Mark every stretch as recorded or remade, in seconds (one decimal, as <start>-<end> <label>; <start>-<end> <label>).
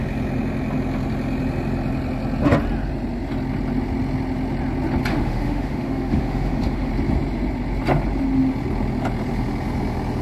0.0-5.1 recorded; 5.1-6.9 remade; 6.9-10.2 recorded